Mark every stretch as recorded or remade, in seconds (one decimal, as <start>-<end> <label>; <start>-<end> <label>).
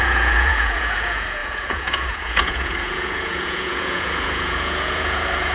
0.0-5.5 remade